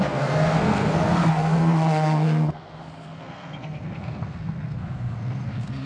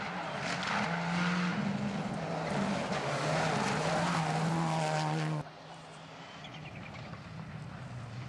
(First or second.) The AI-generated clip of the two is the first